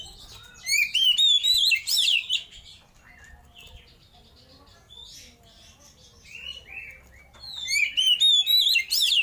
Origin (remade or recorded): recorded